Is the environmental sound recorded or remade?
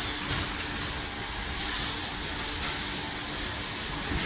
recorded